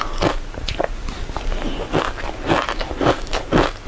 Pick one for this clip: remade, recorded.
recorded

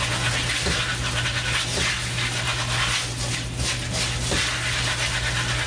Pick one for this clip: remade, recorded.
recorded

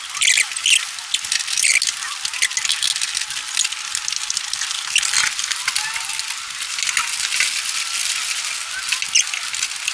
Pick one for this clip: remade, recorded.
recorded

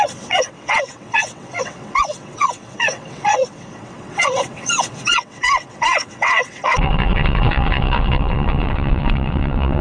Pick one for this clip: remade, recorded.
remade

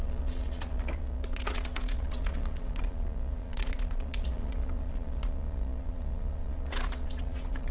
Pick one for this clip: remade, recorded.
remade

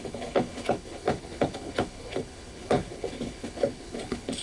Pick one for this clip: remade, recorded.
remade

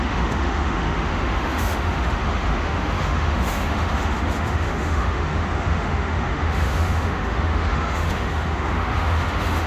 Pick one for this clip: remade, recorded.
remade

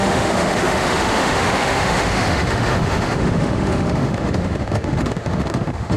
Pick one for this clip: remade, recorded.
remade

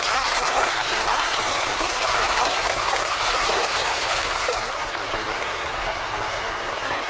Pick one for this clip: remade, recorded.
remade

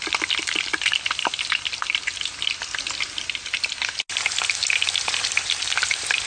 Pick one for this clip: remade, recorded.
recorded